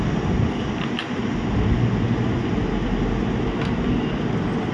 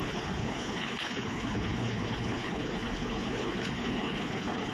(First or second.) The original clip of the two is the first